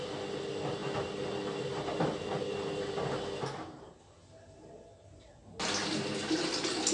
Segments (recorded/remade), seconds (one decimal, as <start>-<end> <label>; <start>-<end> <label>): 0.0-6.9 recorded